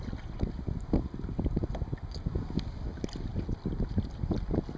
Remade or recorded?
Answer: recorded